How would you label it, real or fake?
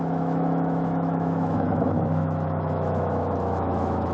fake